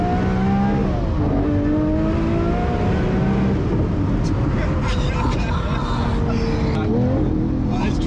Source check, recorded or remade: recorded